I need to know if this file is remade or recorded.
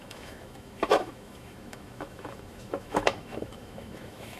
remade